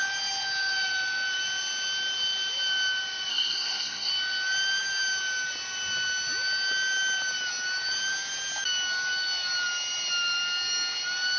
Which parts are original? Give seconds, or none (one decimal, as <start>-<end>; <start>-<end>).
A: 0.0-3.3; 4.1-11.4